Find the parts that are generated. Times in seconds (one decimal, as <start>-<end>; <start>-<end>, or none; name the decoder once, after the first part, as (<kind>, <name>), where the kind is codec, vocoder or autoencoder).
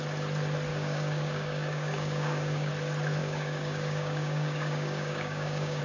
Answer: 0.7-2.7 (codec, DAC); 3.2-5.8